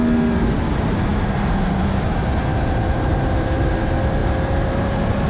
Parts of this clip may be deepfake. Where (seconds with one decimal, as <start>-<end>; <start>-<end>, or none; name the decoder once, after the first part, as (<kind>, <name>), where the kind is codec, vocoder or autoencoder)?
2.5-3.7 (vocoder, BigVGAN v2); 4.2-5.3